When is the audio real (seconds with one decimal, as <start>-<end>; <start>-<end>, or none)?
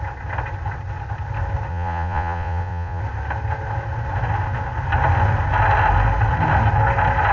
0.0-1.7; 3.0-7.3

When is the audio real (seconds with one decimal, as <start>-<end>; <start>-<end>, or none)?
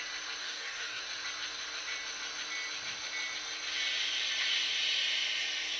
0.0-0.4; 1.0-5.8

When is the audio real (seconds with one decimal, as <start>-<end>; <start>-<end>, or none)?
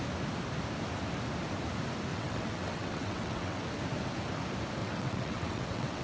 0.0-2.1; 3.6-4.8